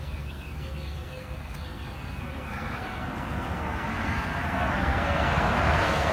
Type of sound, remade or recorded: remade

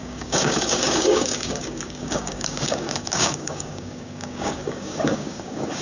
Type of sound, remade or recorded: remade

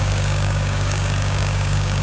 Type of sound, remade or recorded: remade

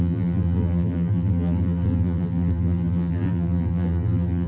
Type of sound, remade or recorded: remade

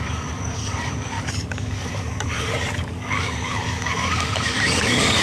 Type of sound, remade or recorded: remade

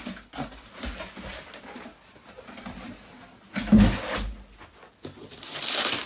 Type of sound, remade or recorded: recorded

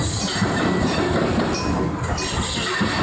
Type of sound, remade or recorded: recorded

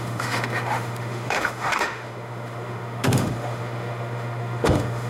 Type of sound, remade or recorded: remade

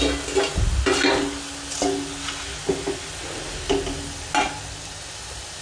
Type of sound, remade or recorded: recorded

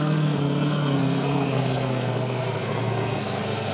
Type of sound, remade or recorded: remade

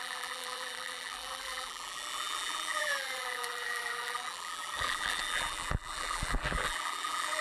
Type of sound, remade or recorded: remade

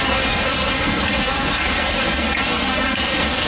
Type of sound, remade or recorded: remade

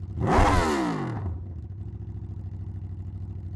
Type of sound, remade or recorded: recorded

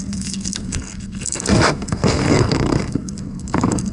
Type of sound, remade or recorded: remade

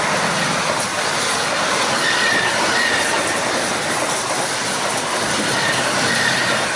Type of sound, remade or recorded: recorded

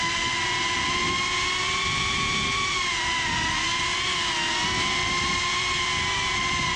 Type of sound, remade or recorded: recorded